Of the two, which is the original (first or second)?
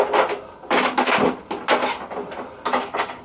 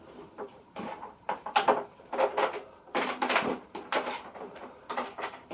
first